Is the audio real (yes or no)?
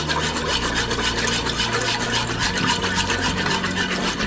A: yes